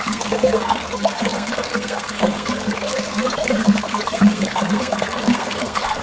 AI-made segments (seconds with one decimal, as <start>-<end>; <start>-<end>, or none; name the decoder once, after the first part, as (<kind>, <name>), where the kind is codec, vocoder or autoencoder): 0.0-6.0 (codec, SNAC)